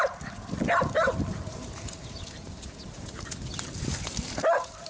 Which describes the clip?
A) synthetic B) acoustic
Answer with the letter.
B